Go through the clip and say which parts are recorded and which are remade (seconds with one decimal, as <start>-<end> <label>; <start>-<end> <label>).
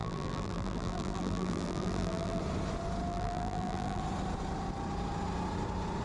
0.0-2.4 remade; 2.4-3.1 recorded; 3.1-4.0 remade; 4.0-6.0 recorded